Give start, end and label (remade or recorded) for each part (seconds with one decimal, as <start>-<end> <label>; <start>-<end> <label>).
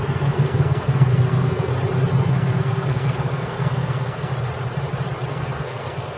0.0-1.7 remade; 1.7-2.2 recorded; 2.2-4.3 remade; 4.3-5.3 recorded; 5.3-6.2 remade